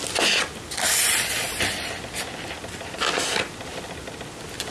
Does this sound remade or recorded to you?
recorded